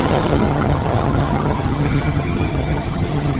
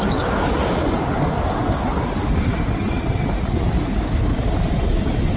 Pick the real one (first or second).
second